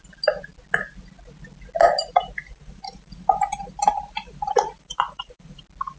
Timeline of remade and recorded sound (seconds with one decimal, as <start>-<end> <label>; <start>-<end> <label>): 0.0-2.0 recorded; 2.0-5.6 remade; 5.6-6.0 recorded